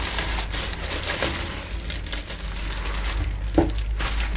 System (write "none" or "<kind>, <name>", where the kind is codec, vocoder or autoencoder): none